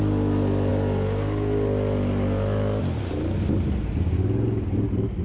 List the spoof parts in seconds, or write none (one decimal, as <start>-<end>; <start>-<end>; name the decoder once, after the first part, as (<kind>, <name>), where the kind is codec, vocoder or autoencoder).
none